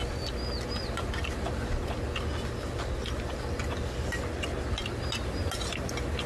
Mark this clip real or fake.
real